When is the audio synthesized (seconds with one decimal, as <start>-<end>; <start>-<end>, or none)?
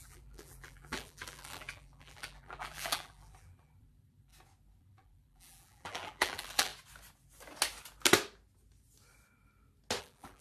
0.0-4.3; 4.8-6.7; 10.0-10.4